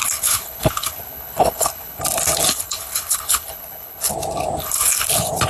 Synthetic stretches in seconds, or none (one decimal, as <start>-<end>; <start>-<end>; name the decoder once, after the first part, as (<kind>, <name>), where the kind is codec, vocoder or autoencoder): 0.0-2.0 (codec, HILCodec); 2.5-4.1; 4.6-5.1